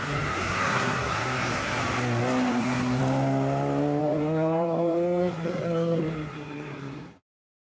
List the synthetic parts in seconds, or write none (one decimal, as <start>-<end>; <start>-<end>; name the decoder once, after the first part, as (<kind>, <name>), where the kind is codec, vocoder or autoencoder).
0.0-1.8 (codec, SNAC); 2.5-3.0; 4.0-7.7